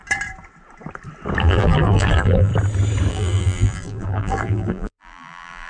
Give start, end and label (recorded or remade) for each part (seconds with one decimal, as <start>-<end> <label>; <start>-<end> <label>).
0.0-1.4 recorded; 1.4-2.5 remade; 2.5-3.1 recorded; 3.1-5.7 remade